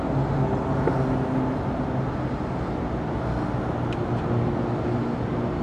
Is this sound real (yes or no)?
yes